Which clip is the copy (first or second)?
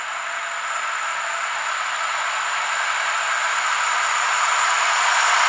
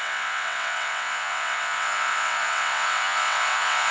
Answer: second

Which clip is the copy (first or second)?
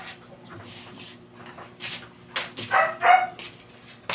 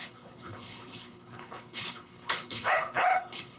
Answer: second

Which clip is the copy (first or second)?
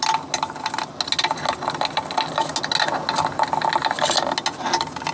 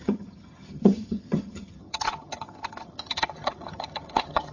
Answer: second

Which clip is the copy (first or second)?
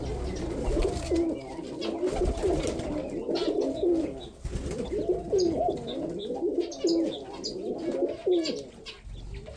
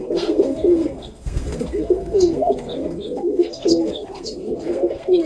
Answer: second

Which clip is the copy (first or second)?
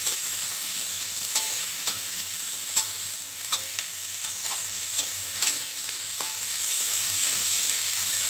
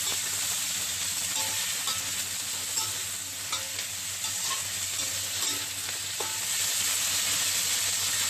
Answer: first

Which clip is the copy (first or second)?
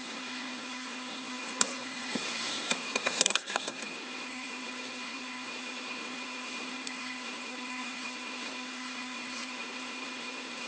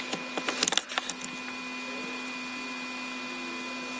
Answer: first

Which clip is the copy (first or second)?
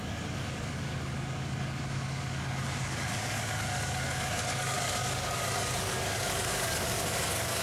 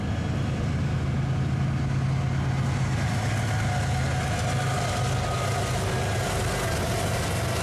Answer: first